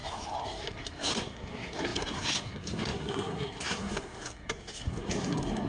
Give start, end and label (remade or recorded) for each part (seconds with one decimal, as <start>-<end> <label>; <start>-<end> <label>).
0.0-5.7 remade